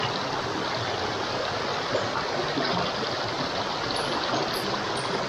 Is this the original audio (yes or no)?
yes